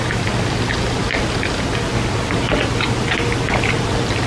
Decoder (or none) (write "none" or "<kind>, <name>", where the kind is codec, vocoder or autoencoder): none